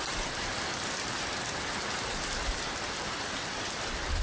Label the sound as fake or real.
real